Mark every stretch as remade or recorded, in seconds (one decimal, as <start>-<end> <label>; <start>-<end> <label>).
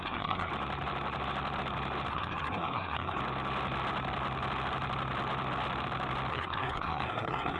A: 0.0-0.5 remade; 0.5-2.1 recorded; 2.1-3.2 remade; 3.2-6.3 recorded; 6.3-7.6 remade